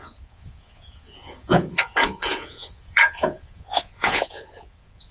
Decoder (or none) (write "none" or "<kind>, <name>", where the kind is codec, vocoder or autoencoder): vocoder, Vocos